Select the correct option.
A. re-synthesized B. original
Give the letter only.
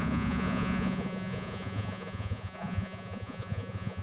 A